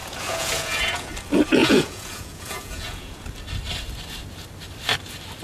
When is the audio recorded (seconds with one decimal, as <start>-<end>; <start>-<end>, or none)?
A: 1.1-1.6; 3.2-5.4